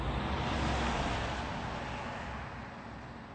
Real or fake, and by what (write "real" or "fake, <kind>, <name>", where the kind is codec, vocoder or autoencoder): real